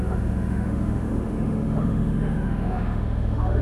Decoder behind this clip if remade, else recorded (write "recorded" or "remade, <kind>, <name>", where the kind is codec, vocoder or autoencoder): remade, autoencoder, DAC-VAE